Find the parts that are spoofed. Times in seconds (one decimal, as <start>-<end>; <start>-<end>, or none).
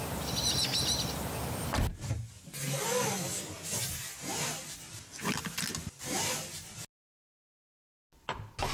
none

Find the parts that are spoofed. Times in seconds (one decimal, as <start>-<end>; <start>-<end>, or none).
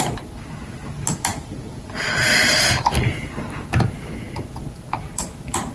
none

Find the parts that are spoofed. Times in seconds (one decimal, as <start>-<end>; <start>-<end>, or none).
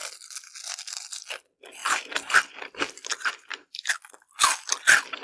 1.8-2.5; 3.1-3.9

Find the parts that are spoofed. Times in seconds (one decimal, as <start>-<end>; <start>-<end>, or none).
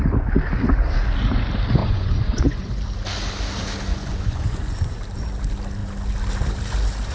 1.8-2.8; 3.9-5.0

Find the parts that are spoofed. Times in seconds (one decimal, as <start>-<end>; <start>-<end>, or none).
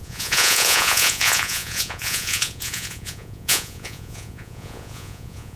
0.0-5.6